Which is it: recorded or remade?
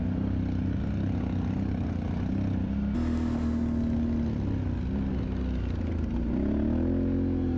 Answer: recorded